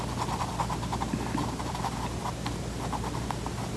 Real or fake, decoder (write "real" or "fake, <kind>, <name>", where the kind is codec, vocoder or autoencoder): real